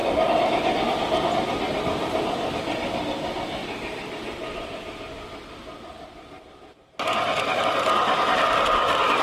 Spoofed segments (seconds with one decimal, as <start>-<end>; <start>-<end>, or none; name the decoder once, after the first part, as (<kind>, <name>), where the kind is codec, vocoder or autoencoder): none